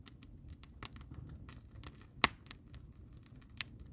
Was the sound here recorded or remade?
recorded